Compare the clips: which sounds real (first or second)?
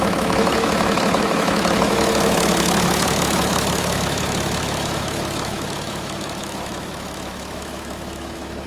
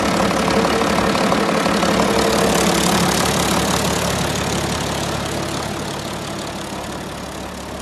second